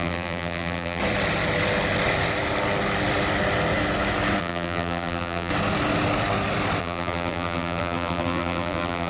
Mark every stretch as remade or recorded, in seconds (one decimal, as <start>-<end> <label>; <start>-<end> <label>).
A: 0.0-1.0 remade; 1.0-4.4 recorded; 4.4-5.5 remade; 5.5-6.8 recorded; 6.8-9.1 remade